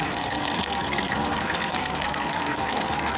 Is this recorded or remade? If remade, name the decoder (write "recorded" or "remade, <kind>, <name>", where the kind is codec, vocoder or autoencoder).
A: remade, codec, SNAC